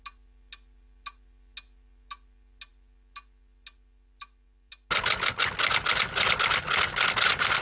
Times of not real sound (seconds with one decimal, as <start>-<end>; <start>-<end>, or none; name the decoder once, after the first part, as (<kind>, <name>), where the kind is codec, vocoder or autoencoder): none